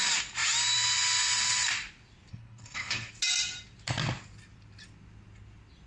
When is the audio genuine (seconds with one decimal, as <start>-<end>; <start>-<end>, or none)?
0.0-2.3; 3.1-5.9